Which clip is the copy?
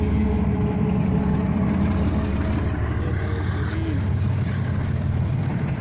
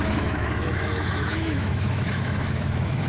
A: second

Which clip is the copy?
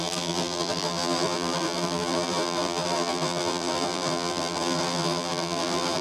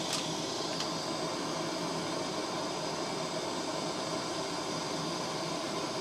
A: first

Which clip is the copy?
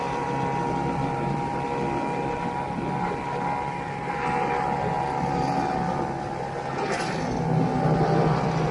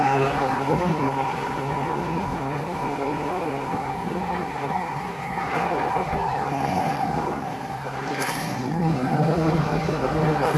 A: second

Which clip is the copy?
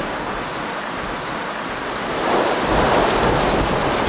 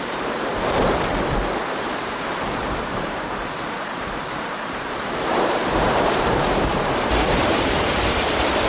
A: second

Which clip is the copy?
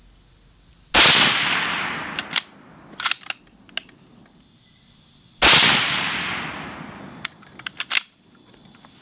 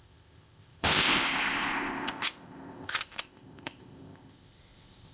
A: second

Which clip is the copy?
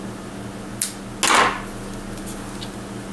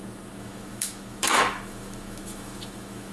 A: second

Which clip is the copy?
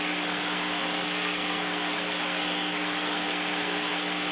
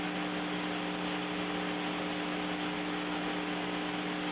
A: first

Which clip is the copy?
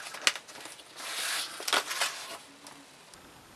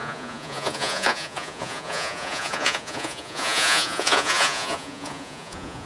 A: second